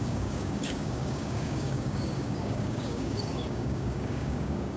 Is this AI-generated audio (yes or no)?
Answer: yes